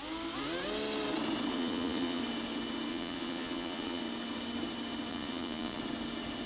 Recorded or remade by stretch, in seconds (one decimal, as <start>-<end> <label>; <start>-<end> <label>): 0.0-1.5 recorded; 1.5-2.2 remade; 2.2-2.9 recorded; 2.9-4.0 remade; 4.0-5.1 recorded; 5.1-5.8 remade; 5.8-6.5 recorded